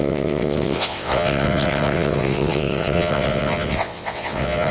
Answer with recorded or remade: remade